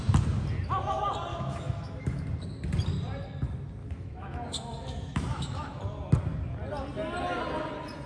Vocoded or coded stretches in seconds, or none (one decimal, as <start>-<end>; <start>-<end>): 1.3-2.2; 3.8-5.8